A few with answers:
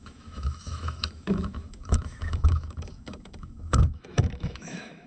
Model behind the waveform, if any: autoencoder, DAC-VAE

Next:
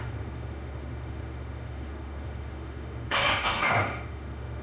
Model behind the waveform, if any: autoencoder, DAC-VAE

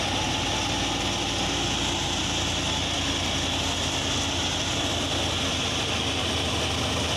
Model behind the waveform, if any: none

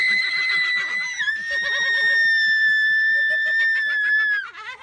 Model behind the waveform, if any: none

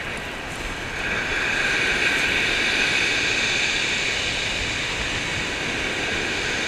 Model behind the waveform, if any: none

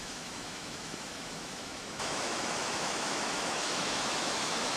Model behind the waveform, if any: autoencoder, DAC-VAE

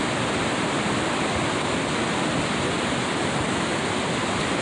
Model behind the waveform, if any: none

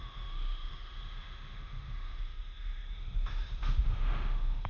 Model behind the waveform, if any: autoencoder, DAC-VAE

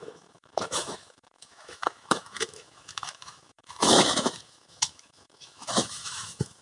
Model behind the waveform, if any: autoencoder, DAC-VAE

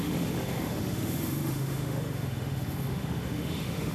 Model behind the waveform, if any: autoencoder, DAC-VAE